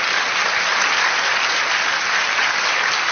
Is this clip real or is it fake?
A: real